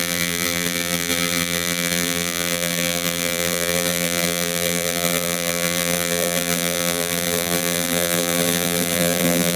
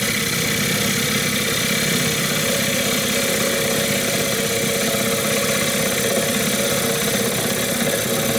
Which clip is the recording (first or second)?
second